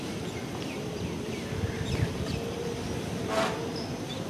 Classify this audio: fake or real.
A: real